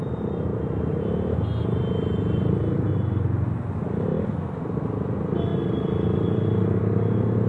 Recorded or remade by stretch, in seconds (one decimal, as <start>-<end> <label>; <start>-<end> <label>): 0.0-7.5 recorded